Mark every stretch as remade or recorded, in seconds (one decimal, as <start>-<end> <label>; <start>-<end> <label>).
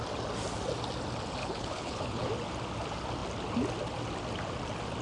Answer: 0.0-1.4 recorded; 1.4-2.3 remade; 2.3-5.0 recorded